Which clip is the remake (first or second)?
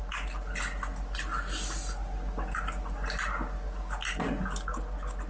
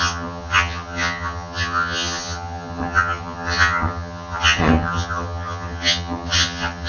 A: second